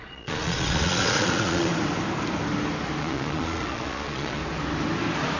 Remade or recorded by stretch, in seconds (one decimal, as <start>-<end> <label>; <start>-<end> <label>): 0.0-1.7 remade; 1.7-3.0 recorded; 3.0-4.4 remade; 4.4-5.4 recorded